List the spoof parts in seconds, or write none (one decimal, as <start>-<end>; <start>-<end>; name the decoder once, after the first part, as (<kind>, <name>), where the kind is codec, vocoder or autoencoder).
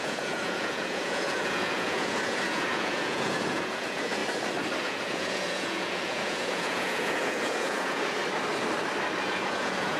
0.0-4.2 (vocoder, Vocos); 4.8-8.2; 9.2-10.0